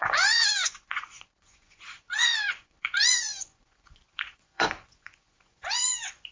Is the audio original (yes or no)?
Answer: no